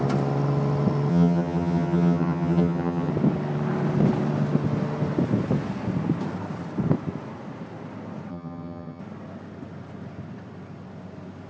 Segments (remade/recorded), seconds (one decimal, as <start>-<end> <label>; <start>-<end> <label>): 0.0-1.1 recorded; 1.1-3.1 remade; 3.1-8.3 recorded; 8.3-9.0 remade; 9.0-11.5 recorded